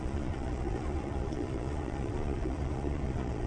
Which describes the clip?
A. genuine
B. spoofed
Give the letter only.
B